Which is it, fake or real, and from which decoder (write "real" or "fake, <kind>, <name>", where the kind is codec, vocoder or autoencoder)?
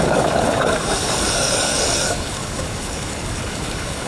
fake, codec, DAC